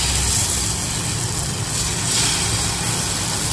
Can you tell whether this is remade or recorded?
recorded